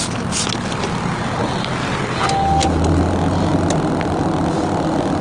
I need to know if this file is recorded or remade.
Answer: recorded